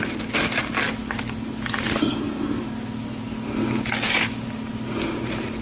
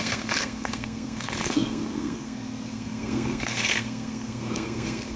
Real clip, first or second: first